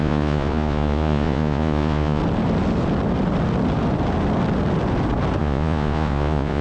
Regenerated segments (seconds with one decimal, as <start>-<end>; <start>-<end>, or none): 0.0-2.2; 5.4-6.6